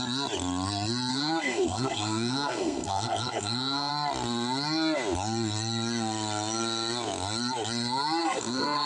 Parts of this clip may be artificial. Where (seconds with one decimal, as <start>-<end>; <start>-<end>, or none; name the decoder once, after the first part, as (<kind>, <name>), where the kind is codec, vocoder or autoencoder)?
1.1-3.9 (codec, SNAC); 8.2-8.9